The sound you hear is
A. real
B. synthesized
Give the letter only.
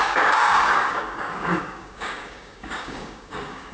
B